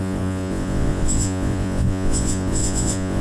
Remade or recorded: remade